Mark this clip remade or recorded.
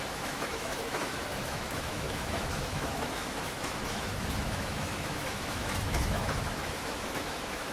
remade